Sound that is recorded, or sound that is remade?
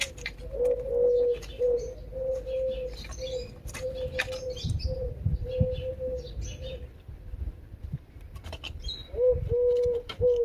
recorded